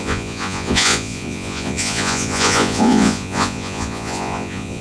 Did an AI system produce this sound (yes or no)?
yes